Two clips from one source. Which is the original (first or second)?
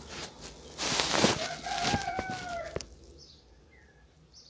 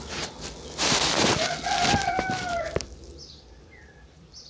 first